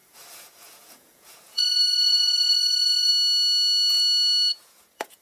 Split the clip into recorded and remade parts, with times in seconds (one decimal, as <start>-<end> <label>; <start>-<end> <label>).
0.0-3.1 remade; 3.1-4.5 recorded; 4.5-5.2 remade